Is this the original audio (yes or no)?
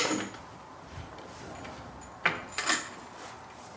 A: yes